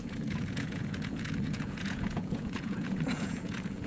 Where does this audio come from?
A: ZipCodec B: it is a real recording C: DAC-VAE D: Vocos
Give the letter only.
D